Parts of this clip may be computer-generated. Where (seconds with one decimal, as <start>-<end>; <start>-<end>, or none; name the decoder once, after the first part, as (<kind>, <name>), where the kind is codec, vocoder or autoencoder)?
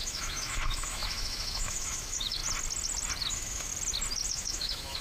0.0-2.4 (autoencoder, DAC-VAE); 3.3-3.7; 4.3-5.0